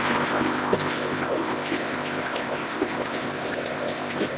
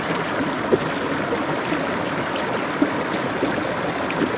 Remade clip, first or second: first